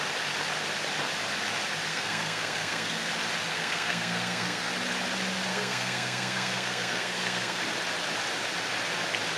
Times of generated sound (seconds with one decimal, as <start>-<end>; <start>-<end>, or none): 1.9-3.1; 3.5-4.7; 5.5-7.6